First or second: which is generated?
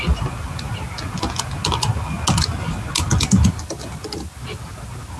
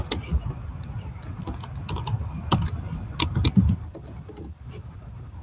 second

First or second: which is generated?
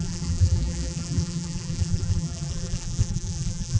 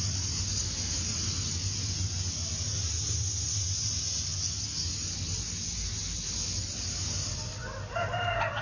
first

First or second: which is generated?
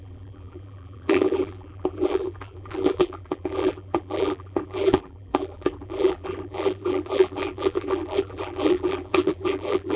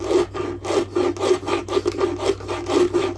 first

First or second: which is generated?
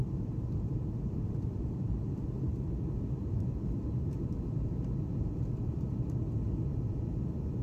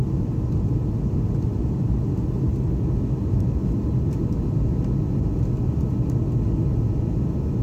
first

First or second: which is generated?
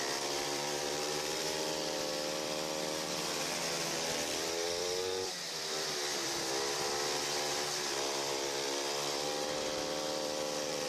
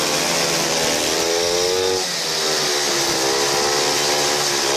first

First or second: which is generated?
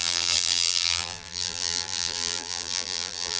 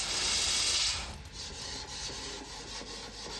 first